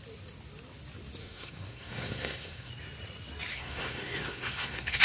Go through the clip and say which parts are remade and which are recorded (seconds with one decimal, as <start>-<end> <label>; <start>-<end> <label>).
0.0-1.2 recorded; 1.2-2.7 remade; 2.7-3.5 recorded; 3.5-5.0 remade